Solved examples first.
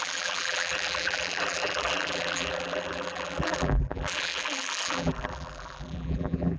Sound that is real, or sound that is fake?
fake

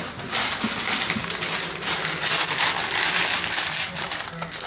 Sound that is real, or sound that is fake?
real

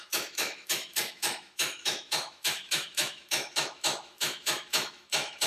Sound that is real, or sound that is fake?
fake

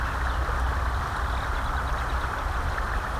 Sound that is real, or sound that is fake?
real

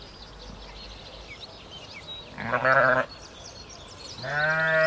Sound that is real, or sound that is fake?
real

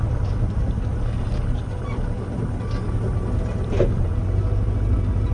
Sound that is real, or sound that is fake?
real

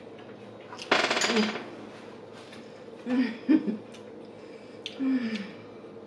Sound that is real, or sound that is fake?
real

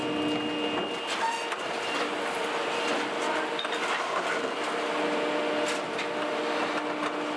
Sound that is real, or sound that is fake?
real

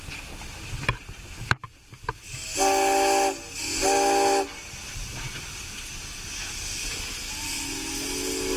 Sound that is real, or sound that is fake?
real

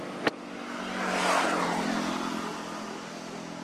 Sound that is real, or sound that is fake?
real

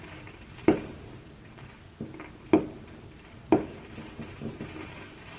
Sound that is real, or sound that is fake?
real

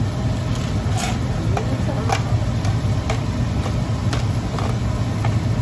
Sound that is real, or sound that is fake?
real